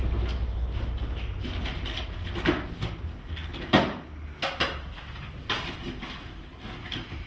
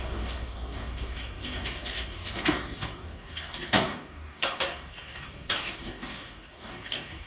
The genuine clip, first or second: first